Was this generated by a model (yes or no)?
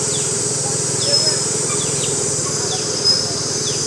no